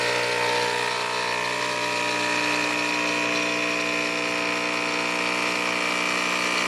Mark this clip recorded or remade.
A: recorded